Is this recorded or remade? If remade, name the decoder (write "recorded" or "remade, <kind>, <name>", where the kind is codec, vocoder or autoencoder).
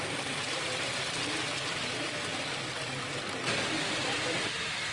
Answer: recorded